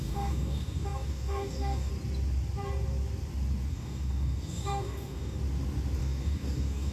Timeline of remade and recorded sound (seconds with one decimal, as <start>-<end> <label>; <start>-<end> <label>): 0.0-1.9 remade; 1.9-3.7 recorded; 3.7-5.4 remade; 5.4-6.0 recorded; 6.0-6.9 remade